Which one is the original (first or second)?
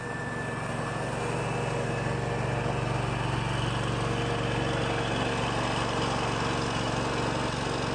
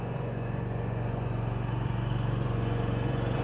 first